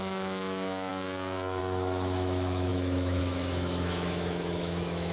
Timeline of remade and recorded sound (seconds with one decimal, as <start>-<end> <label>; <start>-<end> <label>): 0.0-5.1 remade